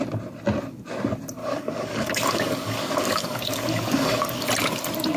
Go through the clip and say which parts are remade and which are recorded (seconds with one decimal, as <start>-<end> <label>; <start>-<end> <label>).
0.0-1.4 recorded; 1.4-4.5 remade; 4.5-5.2 recorded